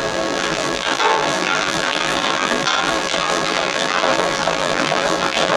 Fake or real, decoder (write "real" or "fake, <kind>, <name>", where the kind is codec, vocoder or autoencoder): fake, vocoder, BigVGAN v2